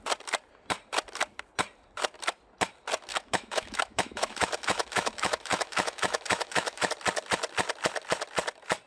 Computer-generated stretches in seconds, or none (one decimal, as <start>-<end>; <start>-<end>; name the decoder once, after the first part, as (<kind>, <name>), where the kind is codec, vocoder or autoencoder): 3.1-6.9 (autoencoder, DAC-VAE)